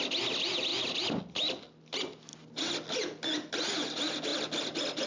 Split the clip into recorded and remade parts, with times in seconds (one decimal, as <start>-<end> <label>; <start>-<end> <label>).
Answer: 0.0-5.1 recorded